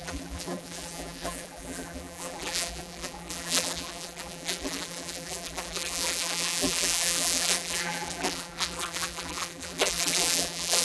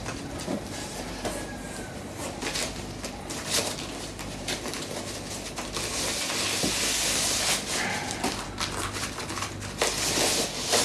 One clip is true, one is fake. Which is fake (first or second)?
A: first